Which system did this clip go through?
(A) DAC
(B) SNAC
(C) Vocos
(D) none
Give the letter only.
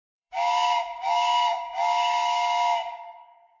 A